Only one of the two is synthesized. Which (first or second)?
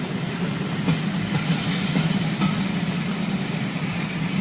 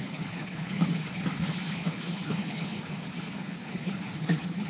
second